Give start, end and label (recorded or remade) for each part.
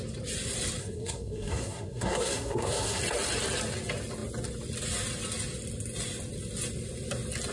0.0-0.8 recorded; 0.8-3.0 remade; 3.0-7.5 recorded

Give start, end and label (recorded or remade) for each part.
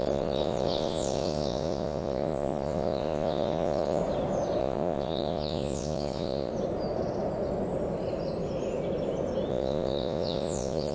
0.0-4.0 remade; 4.0-4.6 recorded; 4.6-6.5 remade; 6.5-9.5 recorded; 9.5-10.9 remade